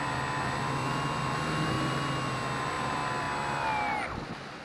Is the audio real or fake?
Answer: real